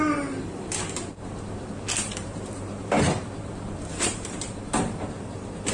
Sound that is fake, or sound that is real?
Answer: fake